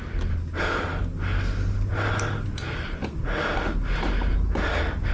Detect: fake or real real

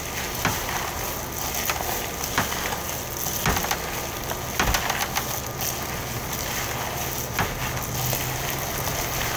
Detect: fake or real real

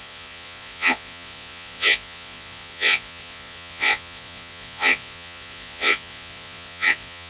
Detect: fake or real fake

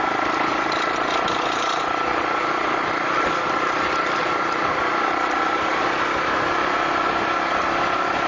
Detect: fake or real real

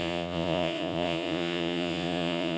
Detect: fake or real fake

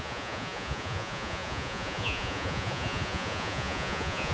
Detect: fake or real fake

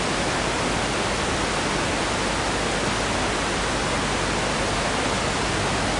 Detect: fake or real real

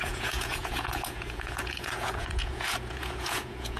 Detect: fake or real fake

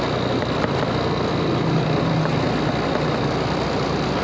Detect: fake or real real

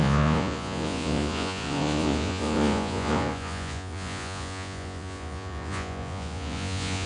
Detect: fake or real fake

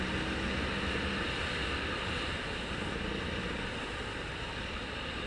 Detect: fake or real real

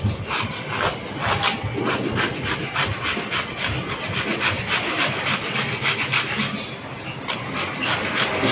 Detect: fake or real real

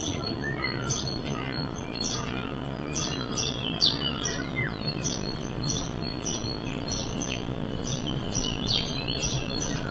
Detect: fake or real fake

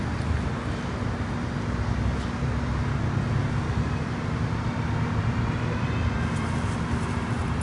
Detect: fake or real real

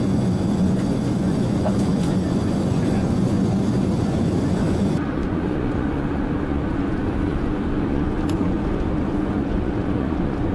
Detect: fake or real fake